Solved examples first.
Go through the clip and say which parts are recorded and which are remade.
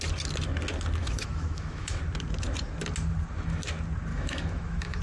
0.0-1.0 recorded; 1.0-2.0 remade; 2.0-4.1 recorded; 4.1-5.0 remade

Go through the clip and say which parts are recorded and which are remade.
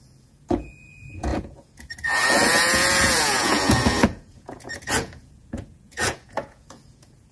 0.0-7.3 remade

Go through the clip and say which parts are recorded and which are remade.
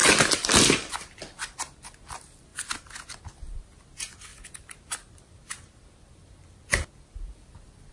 0.0-1.6 remade; 1.6-2.5 recorded; 2.5-3.2 remade; 3.2-4.3 recorded; 4.3-7.9 remade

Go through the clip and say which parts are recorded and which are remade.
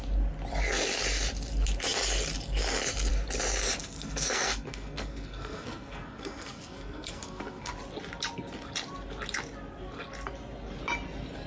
0.0-3.8 recorded; 3.8-7.7 remade; 7.7-11.5 recorded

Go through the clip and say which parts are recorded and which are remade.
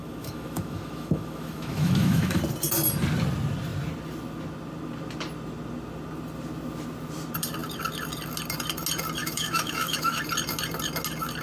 0.0-2.4 remade; 2.4-9.2 recorded; 9.2-10.2 remade; 10.2-11.4 recorded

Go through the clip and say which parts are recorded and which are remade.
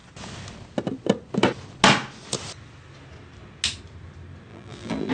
0.0-4.5 recorded; 4.5-5.1 remade